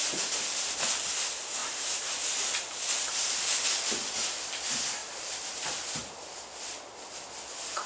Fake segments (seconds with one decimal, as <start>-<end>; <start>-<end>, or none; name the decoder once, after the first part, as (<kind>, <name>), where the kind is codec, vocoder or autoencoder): 1.6-2.6 (vocoder, BigVGAN v2); 5.0-6.1